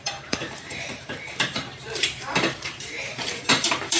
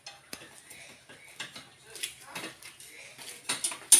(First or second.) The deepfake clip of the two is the first